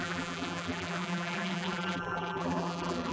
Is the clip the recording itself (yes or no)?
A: no